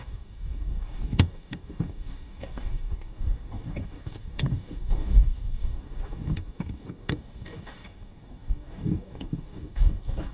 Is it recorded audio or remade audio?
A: remade